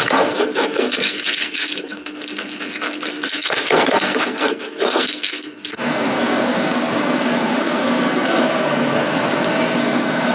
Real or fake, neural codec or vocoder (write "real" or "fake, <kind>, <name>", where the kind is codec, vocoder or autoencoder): fake, codec, SNAC